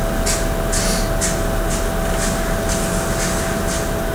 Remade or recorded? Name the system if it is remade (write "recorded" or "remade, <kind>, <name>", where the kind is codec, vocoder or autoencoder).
recorded